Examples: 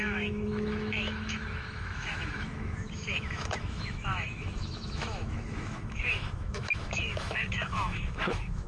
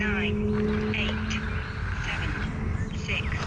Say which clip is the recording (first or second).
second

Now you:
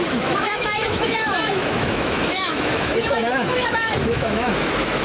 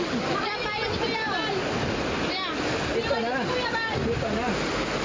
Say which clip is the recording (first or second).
second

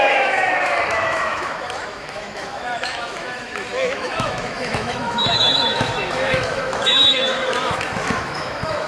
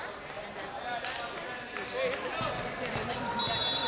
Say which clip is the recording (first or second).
second